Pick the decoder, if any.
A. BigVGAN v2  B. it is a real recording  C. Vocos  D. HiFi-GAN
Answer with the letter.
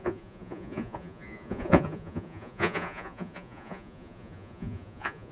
C